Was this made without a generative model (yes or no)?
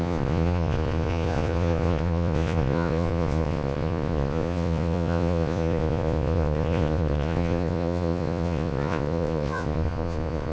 no